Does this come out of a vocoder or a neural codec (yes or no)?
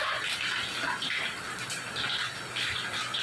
no